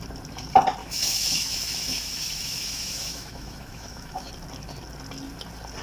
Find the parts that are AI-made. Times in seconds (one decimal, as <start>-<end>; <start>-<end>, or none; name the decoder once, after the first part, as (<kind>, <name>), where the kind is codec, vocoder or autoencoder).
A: 0.8-4.3 (autoencoder, DAC-VAE)